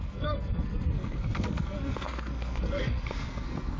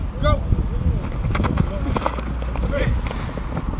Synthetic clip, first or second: first